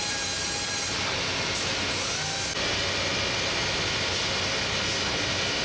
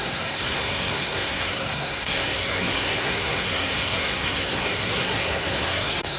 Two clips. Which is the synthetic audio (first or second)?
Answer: second